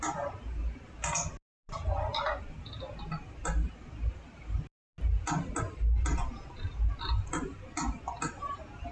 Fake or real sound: real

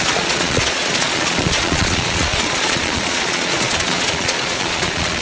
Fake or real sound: fake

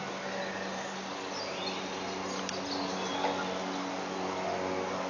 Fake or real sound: real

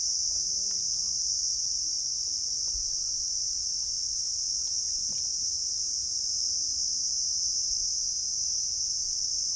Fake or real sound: real